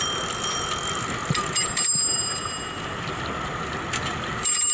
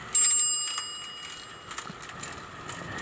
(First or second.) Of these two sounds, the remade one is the first